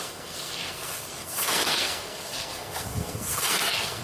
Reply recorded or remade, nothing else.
remade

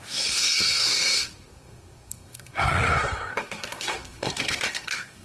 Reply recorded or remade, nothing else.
remade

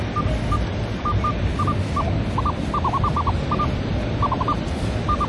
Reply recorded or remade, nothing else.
recorded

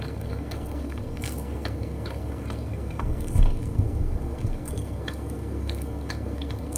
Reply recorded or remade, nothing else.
remade